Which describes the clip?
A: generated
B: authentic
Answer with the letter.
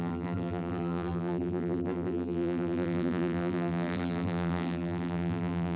A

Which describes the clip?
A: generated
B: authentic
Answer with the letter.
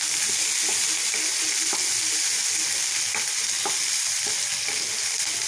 B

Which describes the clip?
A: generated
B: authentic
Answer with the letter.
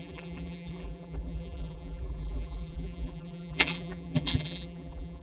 A